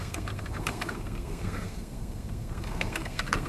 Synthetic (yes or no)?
yes